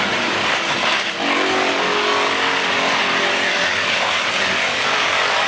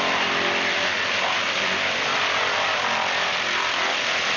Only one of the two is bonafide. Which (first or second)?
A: second